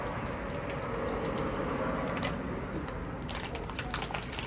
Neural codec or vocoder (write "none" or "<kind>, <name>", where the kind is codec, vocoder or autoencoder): none